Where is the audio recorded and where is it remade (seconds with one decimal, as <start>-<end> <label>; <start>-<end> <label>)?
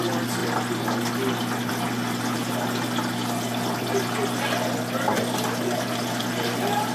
0.0-6.9 recorded